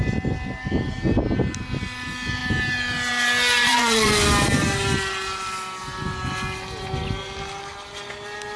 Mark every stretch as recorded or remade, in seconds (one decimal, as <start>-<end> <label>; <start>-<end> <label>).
0.0-3.6 recorded; 3.6-4.1 remade; 4.1-8.6 recorded